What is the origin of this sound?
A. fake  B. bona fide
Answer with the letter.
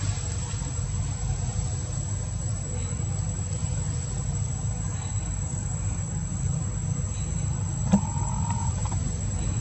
B